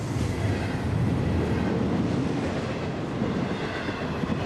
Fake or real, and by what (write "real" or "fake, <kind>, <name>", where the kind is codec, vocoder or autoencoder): real